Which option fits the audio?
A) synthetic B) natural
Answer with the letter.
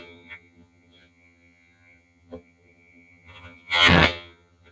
A